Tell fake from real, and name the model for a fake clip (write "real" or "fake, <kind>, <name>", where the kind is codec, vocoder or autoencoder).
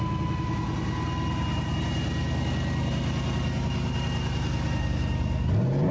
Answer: real